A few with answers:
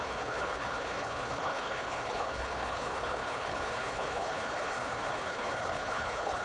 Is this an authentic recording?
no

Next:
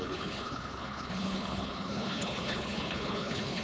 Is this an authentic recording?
no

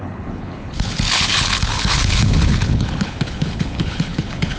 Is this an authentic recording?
no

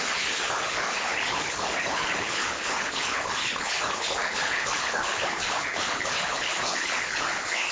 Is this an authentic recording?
no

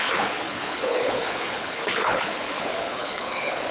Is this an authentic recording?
no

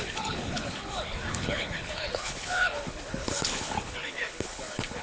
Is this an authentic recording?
no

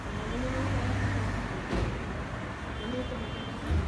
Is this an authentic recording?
yes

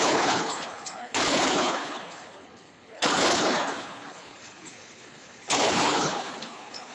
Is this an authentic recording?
no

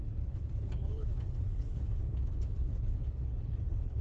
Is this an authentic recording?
no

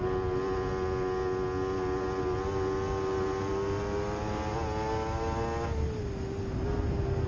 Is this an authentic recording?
yes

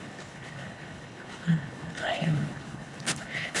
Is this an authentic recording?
no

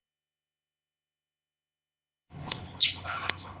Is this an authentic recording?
no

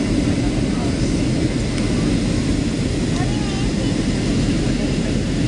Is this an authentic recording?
yes